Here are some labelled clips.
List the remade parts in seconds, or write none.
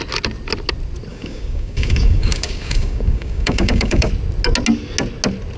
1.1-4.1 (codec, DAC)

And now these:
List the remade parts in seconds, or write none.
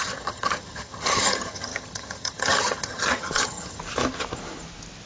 0.0-3.8 (vocoder, HiFi-GAN)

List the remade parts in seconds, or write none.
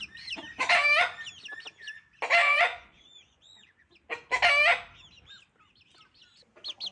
2.4-3.9 (vocoder, Vocos)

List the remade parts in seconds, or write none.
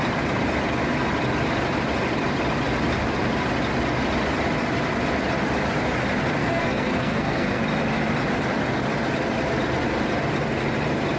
6.4-7.6 (codec, SNAC)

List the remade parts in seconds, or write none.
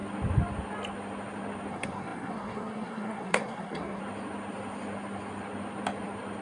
1.7-4.0 (codec, SNAC)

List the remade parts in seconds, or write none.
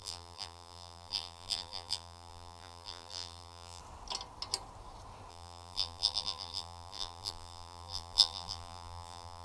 0.0-3.8 (vocoder, BigVGAN v2); 5.3-9.4